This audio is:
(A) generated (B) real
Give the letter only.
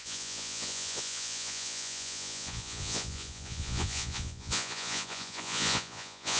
A